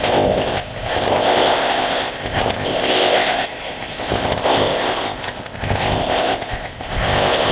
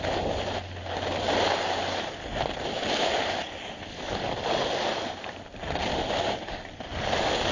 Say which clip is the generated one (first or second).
first